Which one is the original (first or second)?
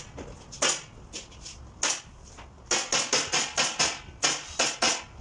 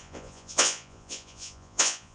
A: first